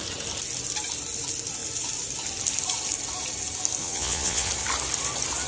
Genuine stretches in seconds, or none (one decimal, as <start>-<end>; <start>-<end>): 0.0-3.8; 4.5-5.5